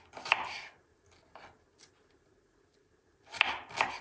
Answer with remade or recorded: recorded